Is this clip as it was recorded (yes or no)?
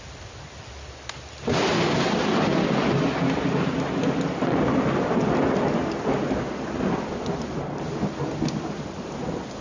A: yes